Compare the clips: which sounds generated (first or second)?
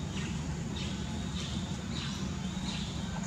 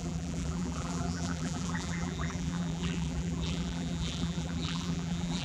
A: second